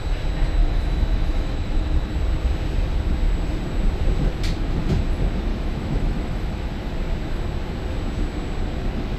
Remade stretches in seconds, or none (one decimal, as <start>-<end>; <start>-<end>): 0.6-2.1; 5.5-6.7